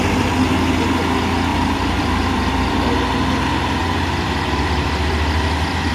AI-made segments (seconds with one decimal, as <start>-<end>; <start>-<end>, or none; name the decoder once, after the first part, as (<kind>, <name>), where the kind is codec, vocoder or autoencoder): 1.5-2.9 (vocoder, BigVGAN v2); 3.8-5.9